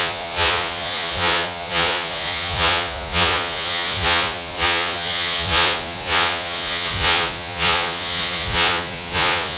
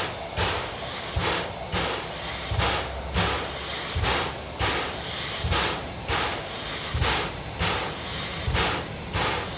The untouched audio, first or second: second